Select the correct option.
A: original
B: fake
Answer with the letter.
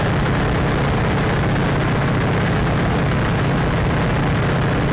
A